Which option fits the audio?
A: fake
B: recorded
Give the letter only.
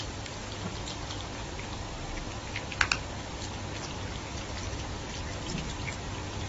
B